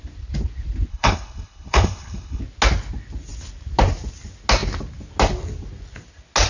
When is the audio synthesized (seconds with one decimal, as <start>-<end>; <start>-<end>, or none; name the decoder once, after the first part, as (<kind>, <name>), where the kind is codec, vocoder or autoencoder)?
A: 0.9-2.4 (codec, HILCodec)

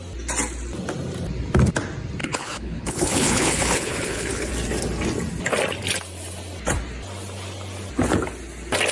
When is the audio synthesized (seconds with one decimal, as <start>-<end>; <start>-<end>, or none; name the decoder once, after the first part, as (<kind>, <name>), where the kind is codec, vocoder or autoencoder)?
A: 2.2-4.5 (codec, HILCodec)